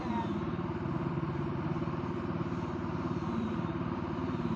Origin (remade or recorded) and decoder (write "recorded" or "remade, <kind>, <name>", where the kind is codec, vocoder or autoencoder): remade, vocoder, BigVGAN v2